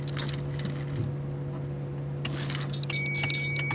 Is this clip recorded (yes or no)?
yes